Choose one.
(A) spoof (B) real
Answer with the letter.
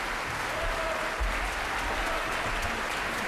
B